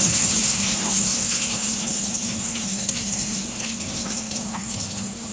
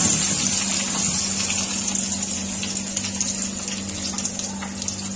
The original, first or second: second